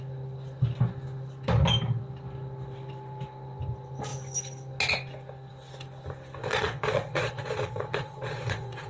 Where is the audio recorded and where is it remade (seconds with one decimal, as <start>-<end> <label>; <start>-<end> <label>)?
0.0-6.4 recorded; 6.4-8.9 remade